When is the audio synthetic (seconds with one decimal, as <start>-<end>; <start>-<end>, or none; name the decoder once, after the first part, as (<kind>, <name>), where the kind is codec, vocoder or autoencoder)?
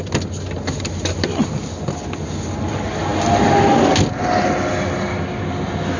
none